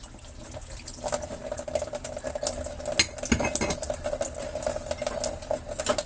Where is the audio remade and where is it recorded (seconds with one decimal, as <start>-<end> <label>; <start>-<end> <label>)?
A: 0.0-1.4 recorded; 1.4-2.3 remade; 2.3-6.1 recorded